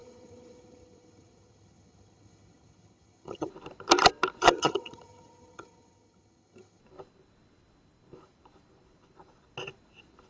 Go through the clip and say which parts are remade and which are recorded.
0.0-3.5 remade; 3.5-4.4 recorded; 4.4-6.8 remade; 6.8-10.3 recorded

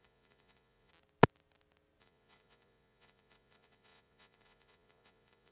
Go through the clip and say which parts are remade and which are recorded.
0.0-0.9 remade; 0.9-2.0 recorded; 2.0-5.5 remade

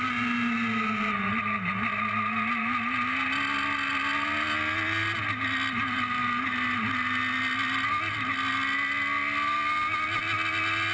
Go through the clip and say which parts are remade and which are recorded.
0.0-10.9 recorded

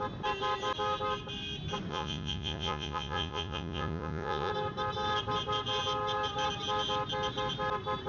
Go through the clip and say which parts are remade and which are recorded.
0.0-1.9 recorded; 1.9-4.5 remade; 4.5-8.1 recorded

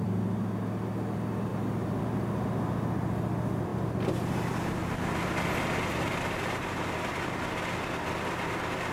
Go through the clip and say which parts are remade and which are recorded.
0.0-1.5 remade; 1.5-2.0 recorded; 2.0-8.9 remade

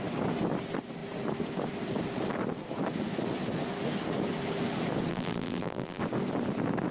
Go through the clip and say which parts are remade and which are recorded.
0.0-5.1 recorded; 5.1-6.0 remade; 6.0-6.9 recorded

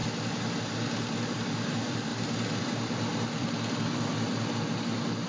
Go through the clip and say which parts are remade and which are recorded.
0.0-0.6 recorded; 0.6-2.1 remade; 2.1-2.6 recorded; 2.6-5.3 remade